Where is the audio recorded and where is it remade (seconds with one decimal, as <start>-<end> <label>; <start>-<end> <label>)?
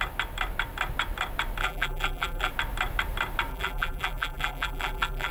0.0-1.6 recorded; 1.6-2.5 remade; 2.5-3.5 recorded; 3.5-5.3 remade